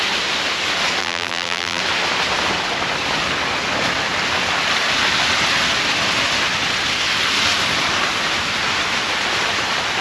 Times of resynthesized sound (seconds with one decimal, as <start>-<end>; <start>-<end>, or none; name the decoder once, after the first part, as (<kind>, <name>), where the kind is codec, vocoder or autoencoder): 1.0-1.8 (vocoder, BigVGAN v2)